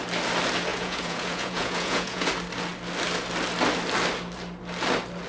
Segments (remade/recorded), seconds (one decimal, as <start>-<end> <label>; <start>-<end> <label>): 0.0-0.7 recorded; 0.7-2.3 remade; 2.3-5.3 recorded